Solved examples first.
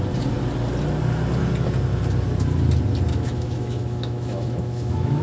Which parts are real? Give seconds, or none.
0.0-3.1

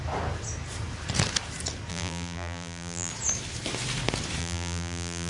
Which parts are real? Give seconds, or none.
0.0-1.9; 3.1-4.4

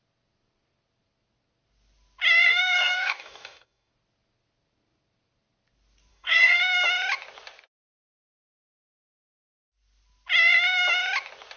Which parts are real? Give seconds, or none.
0.0-2.5; 3.9-6.1; 6.6-11.6

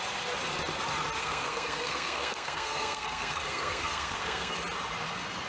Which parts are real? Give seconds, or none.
0.0-1.2; 4.5-5.5

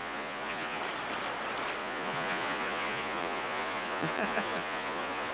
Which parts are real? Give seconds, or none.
0.8-1.8

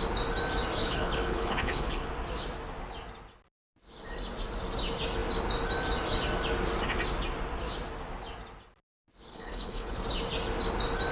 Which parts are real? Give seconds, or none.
0.0-0.8; 2.1-9.3; 10.0-11.1

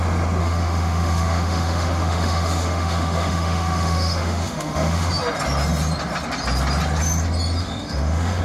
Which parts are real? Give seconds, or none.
0.0-0.4; 5.1-7.6